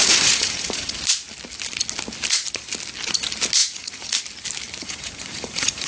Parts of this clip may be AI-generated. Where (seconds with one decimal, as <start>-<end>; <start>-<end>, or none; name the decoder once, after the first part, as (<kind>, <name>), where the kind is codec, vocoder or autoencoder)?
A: 0.0-1.0 (vocoder, Vocos); 3.6-4.2; 4.8-5.9